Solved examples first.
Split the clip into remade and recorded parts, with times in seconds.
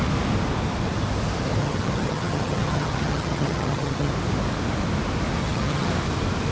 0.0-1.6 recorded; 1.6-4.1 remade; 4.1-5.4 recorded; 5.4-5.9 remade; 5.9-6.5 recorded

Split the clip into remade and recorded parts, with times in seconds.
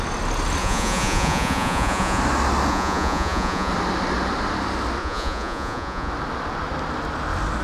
0.0-0.6 recorded; 0.6-2.2 remade; 2.2-2.7 recorded; 2.7-3.7 remade; 3.7-5.0 recorded; 5.0-6.1 remade; 6.1-7.6 recorded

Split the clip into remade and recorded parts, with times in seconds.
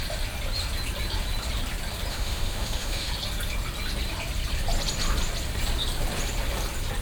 0.0-2.1 recorded; 2.1-3.1 remade; 3.1-7.0 recorded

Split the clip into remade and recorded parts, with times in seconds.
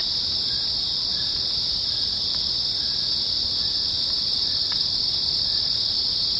0.0-6.4 remade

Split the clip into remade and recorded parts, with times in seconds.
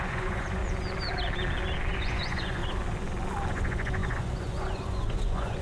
0.0-0.6 remade; 0.6-2.0 recorded; 2.0-2.6 remade; 2.6-3.5 recorded; 3.5-5.6 remade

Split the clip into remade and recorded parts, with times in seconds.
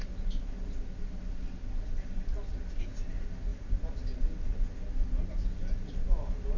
0.0-6.6 recorded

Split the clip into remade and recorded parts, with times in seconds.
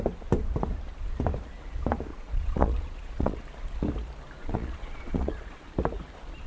0.0-2.1 recorded; 2.1-3.4 remade; 3.4-4.4 recorded; 4.4-5.7 remade; 5.7-6.5 recorded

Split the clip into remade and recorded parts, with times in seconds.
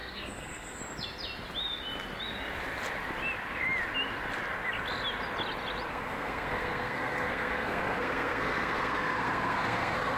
0.0-0.8 remade; 0.8-5.9 recorded; 5.9-10.2 remade